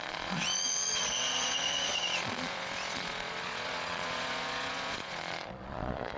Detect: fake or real fake